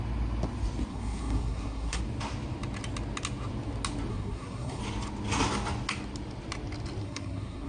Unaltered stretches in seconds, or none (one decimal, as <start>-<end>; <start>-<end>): 0.0-0.9; 2.0-4.1; 4.8-7.0